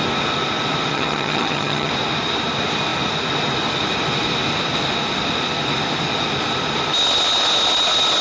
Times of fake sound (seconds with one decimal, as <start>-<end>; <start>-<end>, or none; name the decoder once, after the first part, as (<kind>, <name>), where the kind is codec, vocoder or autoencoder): 0.9-1.9 (vocoder, HiFi-GAN)

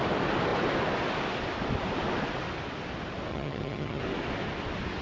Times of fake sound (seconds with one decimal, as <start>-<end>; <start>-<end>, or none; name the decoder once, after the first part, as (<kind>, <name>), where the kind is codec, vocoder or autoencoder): 3.3-4.0 (vocoder, HiFi-GAN)

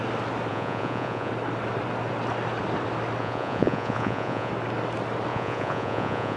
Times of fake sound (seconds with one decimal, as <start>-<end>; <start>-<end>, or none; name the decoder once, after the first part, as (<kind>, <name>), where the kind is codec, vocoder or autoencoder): 0.5-1.3 (vocoder, Vocos); 3.2-4.5; 5.3-6.4

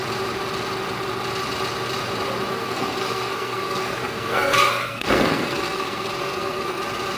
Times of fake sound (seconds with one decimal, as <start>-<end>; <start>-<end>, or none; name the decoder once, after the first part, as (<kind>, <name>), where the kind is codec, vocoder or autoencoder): 2.5-6.8 (codec, SNAC)

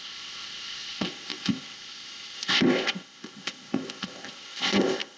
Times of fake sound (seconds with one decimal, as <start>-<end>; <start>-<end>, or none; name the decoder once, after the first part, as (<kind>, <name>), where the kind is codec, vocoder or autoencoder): 0.0-5.2 (codec, ZipCodec)